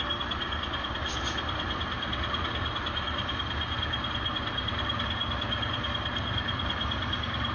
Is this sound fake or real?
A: real